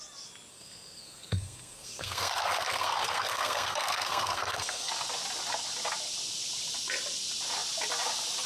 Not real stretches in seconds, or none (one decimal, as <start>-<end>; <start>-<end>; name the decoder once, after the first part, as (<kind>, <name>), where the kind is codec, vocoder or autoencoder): 0.5-4.9 (codec, SNAC)